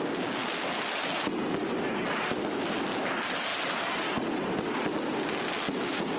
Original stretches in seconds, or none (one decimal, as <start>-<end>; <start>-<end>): 0.0-6.2